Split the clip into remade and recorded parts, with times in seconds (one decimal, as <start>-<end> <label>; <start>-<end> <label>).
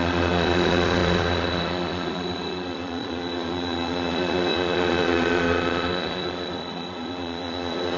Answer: 0.0-8.0 remade